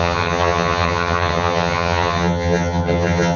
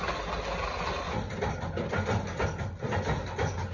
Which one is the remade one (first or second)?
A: first